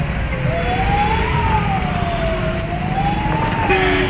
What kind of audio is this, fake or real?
real